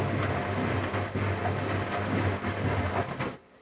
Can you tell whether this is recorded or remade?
recorded